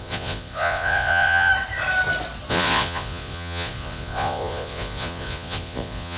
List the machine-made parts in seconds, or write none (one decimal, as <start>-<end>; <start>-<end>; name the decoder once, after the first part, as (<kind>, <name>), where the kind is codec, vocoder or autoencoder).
0.0-1.5 (vocoder, Vocos); 2.5-6.2